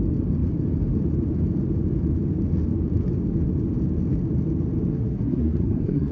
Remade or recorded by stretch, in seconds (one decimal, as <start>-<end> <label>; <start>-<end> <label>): 0.0-4.9 recorded; 4.9-6.1 remade